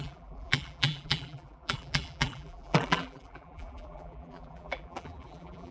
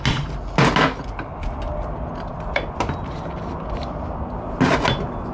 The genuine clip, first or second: second